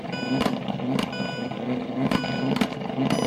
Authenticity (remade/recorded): recorded